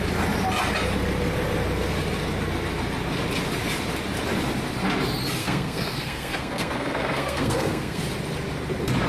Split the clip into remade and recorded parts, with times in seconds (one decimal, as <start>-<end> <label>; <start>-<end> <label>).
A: 0.0-5.4 recorded; 5.4-8.0 remade; 8.0-9.1 recorded